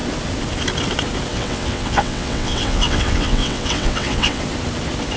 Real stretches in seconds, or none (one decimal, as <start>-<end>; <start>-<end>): 0.0-1.3; 4.4-5.2

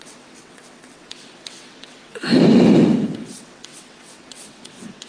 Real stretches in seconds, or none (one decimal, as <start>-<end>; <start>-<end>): 2.4-3.2

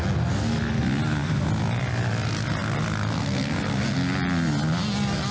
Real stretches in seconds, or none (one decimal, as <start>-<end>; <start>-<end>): 0.0-5.3

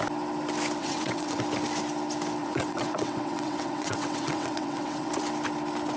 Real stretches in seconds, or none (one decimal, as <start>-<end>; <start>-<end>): 0.0-0.8; 1.4-2.4; 5.1-6.0